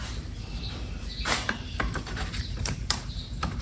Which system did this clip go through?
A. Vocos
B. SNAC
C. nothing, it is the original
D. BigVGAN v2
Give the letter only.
D